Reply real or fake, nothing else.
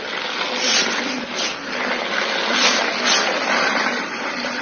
real